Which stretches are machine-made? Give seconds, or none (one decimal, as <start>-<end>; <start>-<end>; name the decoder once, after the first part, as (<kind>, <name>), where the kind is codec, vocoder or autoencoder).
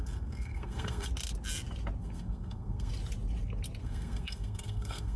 0.0-1.1 (codec, SNAC); 2.0-2.9; 3.8-5.2